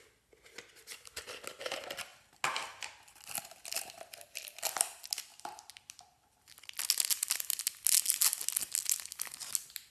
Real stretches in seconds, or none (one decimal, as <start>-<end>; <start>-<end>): 0.0-9.9